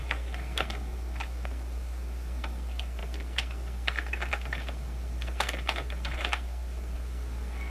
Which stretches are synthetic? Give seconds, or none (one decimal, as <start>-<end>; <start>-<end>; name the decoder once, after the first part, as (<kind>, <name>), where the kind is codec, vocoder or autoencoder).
0.0-7.7 (codec, SNAC)